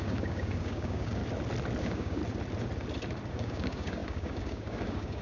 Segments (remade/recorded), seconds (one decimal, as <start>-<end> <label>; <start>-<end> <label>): 0.0-1.2 remade; 1.2-1.8 recorded; 1.8-2.2 remade; 2.2-3.3 recorded; 3.3-5.2 remade